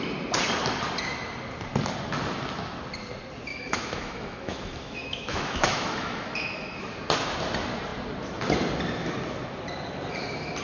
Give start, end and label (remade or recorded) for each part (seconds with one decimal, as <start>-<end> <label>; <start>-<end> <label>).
0.0-3.5 recorded; 3.5-6.9 remade; 6.9-10.6 recorded